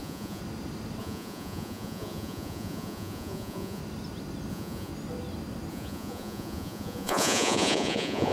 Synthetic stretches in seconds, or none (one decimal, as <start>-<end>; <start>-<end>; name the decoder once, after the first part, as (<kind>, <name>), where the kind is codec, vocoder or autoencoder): 0.0-0.4 (vocoder, Vocos); 1.0-3.8; 4.5-4.9; 5.7-8.3